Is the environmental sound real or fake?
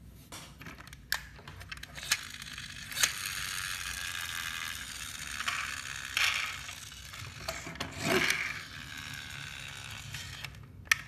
real